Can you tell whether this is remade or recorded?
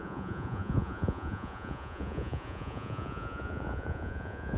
remade